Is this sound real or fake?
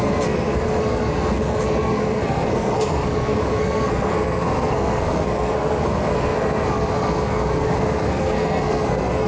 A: fake